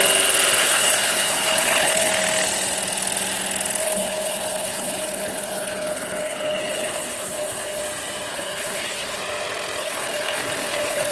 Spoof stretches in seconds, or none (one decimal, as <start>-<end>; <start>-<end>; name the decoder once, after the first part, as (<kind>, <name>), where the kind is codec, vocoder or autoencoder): 0.6-2.1 (codec, HILCodec); 3.8-7.8; 8.3-9.2; 9.8-11.1